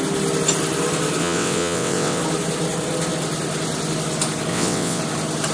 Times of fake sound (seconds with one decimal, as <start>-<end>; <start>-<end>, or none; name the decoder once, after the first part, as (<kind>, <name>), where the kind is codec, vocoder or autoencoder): 1.2-2.2 (vocoder, WaveNeXt); 4.5-5.0